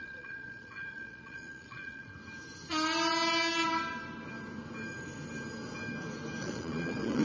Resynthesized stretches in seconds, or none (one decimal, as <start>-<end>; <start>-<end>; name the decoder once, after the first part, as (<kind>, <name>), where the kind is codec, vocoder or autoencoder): 0.0-2.1 (vocoder, Vocos); 6.4-7.2